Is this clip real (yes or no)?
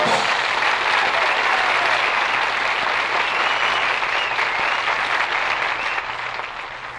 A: yes